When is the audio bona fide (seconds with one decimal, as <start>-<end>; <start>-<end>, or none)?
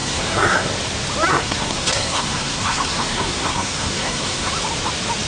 0.7-1.3; 4.5-5.3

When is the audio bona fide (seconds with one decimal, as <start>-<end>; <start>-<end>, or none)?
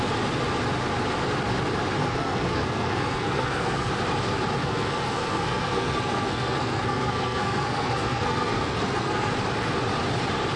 0.0-2.0; 3.9-4.6; 9.3-10.6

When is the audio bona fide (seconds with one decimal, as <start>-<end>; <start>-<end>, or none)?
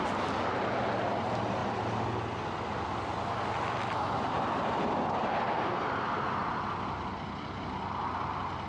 0.0-8.7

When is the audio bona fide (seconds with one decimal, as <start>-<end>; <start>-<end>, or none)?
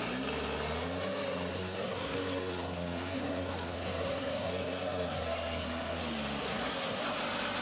0.0-1.5; 6.0-6.4; 7.0-7.6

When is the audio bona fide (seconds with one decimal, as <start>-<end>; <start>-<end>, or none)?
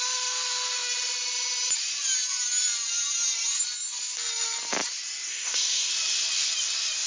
0.0-5.3; 5.9-7.1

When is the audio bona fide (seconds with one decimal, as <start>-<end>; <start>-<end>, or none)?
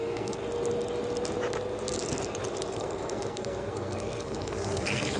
0.4-2.7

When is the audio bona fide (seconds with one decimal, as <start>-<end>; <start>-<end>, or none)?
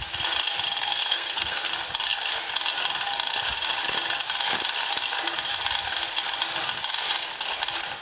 0.0-0.8; 1.7-8.0